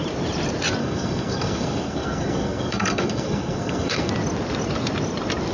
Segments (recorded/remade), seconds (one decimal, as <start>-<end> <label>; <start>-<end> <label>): 0.0-0.8 recorded; 0.8-4.1 remade; 4.1-5.5 recorded